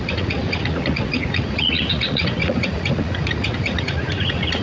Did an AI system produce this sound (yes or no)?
yes